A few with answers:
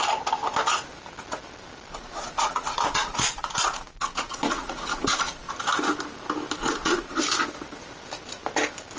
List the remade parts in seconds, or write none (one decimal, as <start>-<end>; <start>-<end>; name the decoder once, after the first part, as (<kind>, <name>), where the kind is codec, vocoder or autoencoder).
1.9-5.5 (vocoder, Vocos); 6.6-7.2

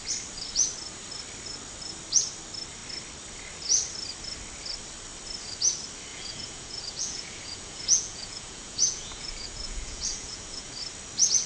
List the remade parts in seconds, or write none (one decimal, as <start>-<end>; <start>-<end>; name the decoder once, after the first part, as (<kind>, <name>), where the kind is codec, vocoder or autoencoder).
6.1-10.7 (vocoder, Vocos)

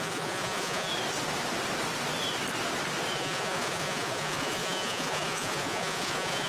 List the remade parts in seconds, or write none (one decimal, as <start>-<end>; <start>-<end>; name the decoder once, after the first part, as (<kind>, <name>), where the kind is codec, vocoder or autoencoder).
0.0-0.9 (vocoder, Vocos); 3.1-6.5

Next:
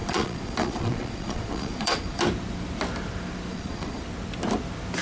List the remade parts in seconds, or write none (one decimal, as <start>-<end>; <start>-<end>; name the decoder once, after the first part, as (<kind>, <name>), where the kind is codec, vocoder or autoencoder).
0.0-2.2 (vocoder, Vocos); 3.5-4.0

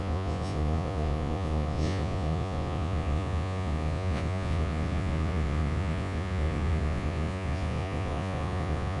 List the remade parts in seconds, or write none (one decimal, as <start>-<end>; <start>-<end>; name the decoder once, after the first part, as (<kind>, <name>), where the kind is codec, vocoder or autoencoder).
0.0-9.0 (vocoder, Vocos)

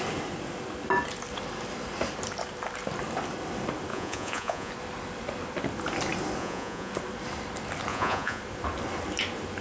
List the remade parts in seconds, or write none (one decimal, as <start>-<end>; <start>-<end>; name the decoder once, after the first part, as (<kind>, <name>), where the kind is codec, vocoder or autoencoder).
3.9-4.7 (vocoder, Vocos); 6.4-6.9; 7.9-8.4